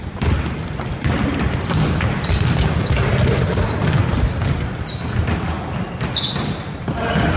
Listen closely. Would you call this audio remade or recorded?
recorded